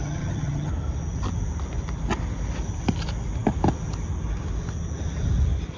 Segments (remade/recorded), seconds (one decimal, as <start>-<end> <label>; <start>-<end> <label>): 0.0-0.7 remade; 0.7-5.8 recorded